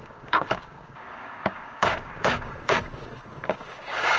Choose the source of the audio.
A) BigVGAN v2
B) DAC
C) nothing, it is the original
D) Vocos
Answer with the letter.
B